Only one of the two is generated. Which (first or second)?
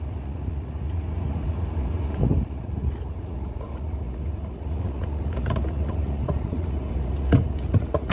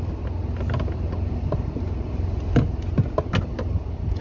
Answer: first